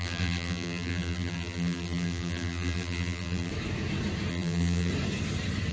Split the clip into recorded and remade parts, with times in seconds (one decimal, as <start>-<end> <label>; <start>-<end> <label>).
0.0-3.5 remade; 3.5-4.3 recorded; 4.3-4.9 remade; 4.9-5.7 recorded